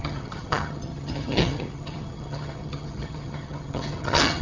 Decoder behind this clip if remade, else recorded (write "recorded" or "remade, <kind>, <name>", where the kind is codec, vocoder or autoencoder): remade, vocoder, HiFi-GAN